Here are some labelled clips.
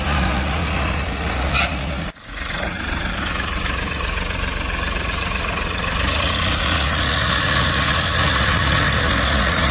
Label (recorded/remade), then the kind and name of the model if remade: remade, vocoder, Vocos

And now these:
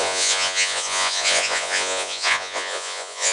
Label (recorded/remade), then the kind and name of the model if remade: remade, vocoder, Vocos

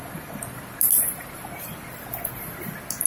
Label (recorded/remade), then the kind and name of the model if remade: recorded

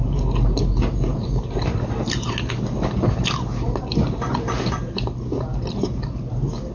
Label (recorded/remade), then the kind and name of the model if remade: recorded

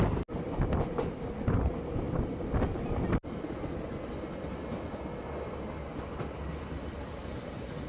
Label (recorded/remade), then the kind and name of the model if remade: recorded